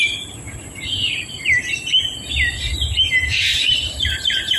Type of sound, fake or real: fake